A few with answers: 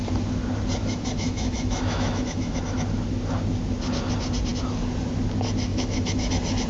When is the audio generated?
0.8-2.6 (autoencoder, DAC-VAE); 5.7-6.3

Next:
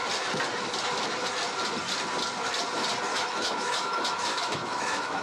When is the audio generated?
3.1-5.2 (autoencoder, DAC-VAE)

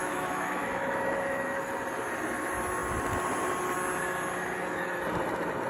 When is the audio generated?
0.0-1.6 (autoencoder, DAC-VAE)